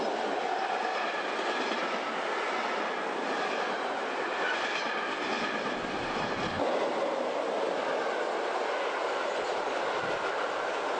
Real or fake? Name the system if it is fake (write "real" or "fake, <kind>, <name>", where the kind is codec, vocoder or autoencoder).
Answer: real